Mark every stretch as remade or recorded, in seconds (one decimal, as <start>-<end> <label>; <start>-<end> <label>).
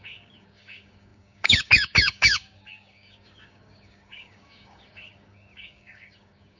0.0-6.6 remade